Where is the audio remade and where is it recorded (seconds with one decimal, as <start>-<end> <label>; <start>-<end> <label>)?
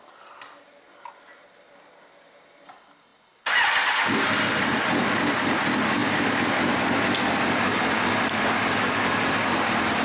0.0-3.1 remade; 3.1-4.3 recorded; 4.3-6.0 remade; 6.0-8.1 recorded; 8.1-10.0 remade